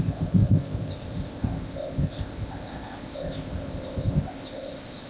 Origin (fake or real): fake